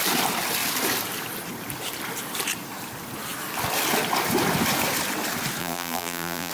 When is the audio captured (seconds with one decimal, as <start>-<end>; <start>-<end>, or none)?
0.0-5.6